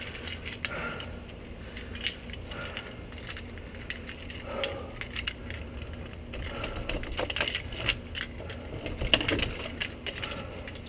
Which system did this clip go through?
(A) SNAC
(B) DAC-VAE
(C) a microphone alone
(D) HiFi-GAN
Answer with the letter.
C